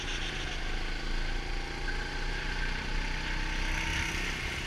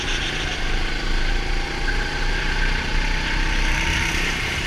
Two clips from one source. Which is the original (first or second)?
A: first